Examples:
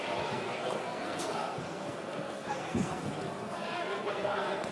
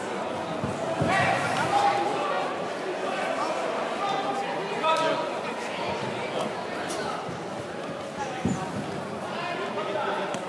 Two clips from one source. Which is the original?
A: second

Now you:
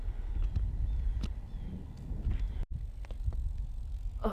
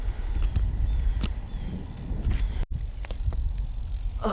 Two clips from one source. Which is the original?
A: first